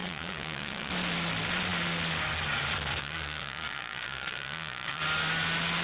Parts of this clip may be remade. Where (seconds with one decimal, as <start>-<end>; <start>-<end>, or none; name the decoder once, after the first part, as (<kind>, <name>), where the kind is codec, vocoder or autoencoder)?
0.0-0.9 (vocoder, Vocos); 3.0-5.0